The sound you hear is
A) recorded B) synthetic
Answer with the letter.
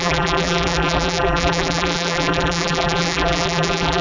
B